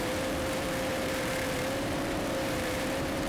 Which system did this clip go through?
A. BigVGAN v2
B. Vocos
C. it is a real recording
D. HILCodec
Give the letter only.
A